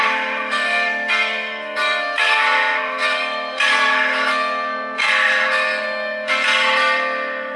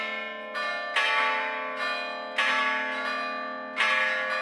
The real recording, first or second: second